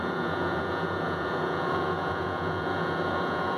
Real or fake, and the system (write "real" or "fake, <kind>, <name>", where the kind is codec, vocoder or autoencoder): fake, vocoder, Vocos